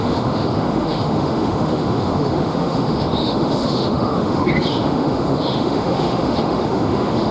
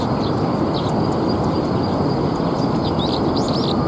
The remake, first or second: first